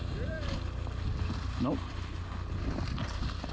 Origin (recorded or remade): recorded